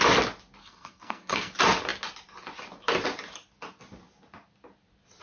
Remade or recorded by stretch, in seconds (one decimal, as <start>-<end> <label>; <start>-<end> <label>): 0.0-0.6 recorded; 0.6-1.5 remade; 1.5-5.2 recorded